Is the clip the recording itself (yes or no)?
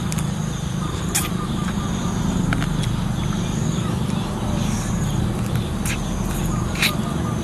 yes